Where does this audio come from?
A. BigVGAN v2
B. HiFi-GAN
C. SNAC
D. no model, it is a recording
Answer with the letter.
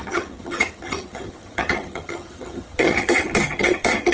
B